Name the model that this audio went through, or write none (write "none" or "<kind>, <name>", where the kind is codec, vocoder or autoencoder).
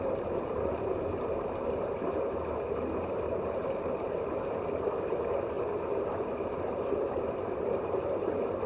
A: vocoder, BigVGAN v2